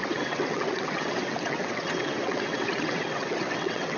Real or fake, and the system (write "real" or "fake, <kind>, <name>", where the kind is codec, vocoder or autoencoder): fake, vocoder, WaveNeXt